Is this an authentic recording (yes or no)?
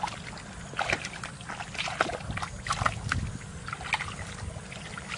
yes